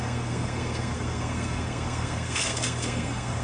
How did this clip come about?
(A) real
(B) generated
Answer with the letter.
B